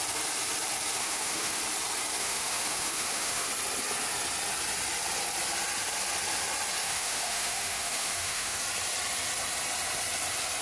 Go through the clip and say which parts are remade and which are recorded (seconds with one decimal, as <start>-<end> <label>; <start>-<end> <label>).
0.0-1.0 recorded; 1.0-1.6 remade; 1.6-2.2 recorded; 2.2-3.5 remade; 3.5-6.8 recorded; 6.8-8.6 remade; 8.6-10.6 recorded